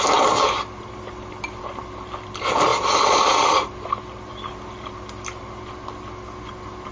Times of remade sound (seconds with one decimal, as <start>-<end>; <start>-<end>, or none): none

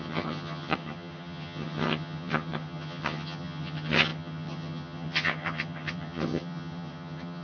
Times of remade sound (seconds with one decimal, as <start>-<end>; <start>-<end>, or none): 0.0-7.4